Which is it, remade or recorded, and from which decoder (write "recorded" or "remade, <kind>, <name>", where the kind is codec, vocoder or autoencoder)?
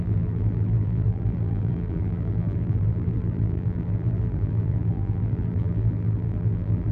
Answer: remade, vocoder, BigVGAN v2